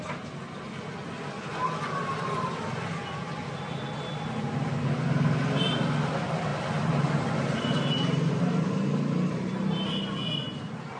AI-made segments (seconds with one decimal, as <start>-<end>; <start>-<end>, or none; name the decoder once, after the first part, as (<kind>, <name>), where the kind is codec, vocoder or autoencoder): none